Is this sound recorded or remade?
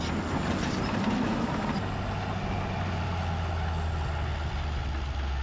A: recorded